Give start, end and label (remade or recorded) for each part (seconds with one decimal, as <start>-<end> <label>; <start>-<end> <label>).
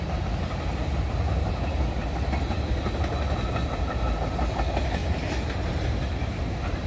0.0-6.9 recorded